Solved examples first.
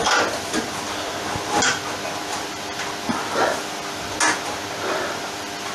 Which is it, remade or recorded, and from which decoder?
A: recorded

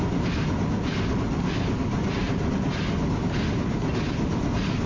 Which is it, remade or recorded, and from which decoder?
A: recorded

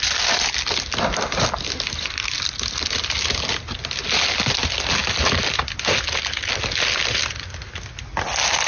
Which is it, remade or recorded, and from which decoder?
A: recorded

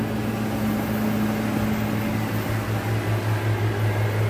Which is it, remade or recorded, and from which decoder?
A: recorded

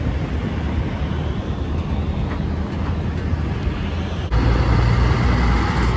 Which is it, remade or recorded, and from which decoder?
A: recorded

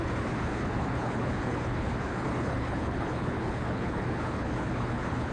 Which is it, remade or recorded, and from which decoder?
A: remade, codec, HILCodec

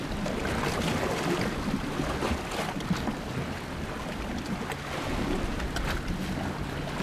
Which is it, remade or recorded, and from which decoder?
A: recorded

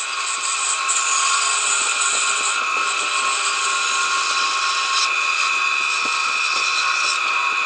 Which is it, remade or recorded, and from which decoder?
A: recorded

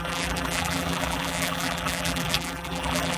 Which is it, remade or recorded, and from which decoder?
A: remade, vocoder, BigVGAN v2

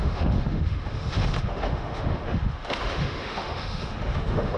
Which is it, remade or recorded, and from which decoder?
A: remade, autoencoder, DAC-VAE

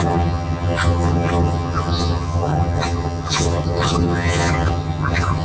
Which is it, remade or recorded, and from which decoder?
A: remade, vocoder, HiFi-GAN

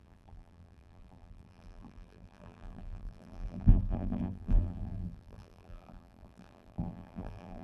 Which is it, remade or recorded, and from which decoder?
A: remade, vocoder, BigVGAN v2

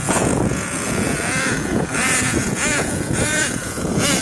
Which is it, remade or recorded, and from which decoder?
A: remade, vocoder, Vocos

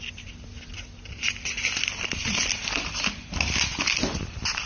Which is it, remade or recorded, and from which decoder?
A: recorded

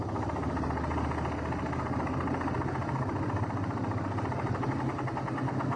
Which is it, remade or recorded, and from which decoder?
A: recorded